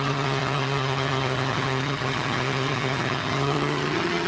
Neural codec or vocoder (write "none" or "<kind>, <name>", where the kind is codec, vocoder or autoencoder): vocoder, HiFi-GAN